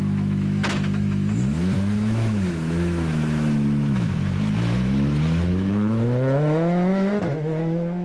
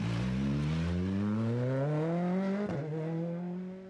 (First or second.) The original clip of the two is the second